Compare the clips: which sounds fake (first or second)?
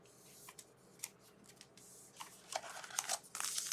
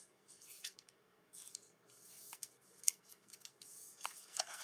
second